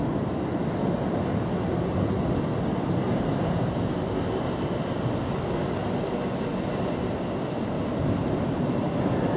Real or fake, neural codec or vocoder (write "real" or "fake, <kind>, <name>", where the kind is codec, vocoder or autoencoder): real